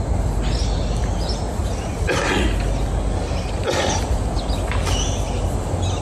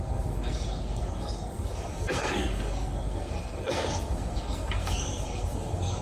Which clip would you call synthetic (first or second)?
second